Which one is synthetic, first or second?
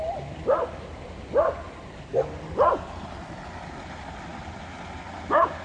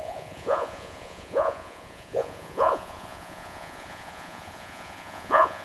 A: second